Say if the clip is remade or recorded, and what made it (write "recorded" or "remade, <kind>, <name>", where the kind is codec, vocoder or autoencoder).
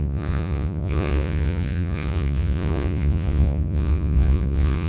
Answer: remade, vocoder, Vocos